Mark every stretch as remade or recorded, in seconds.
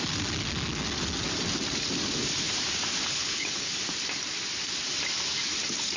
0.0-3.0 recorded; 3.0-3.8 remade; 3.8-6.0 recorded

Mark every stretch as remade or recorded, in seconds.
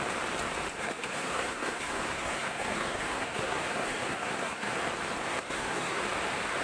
0.0-0.8 recorded; 0.8-4.8 remade; 4.8-5.3 recorded; 5.3-6.0 remade; 6.0-6.6 recorded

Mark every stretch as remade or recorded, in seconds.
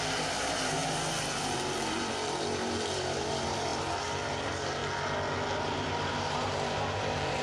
0.0-4.8 remade; 4.8-5.6 recorded; 5.6-7.4 remade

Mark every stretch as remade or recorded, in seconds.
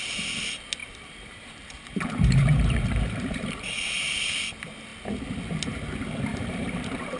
0.0-0.8 recorded; 0.8-3.6 remade; 3.6-6.3 recorded; 6.3-7.2 remade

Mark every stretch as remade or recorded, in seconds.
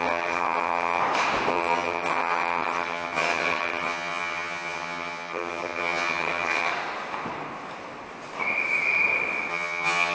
0.0-1.0 remade; 1.0-1.5 recorded; 1.5-6.7 remade; 6.7-9.5 recorded; 9.5-10.1 remade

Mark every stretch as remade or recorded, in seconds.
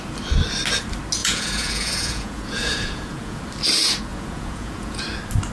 0.0-1.2 recorded; 1.2-3.4 remade; 3.4-4.1 recorded; 4.1-5.0 remade; 5.0-5.5 recorded